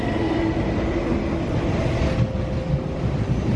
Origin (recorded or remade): recorded